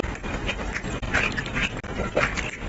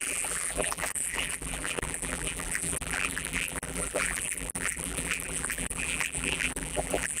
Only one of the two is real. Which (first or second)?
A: first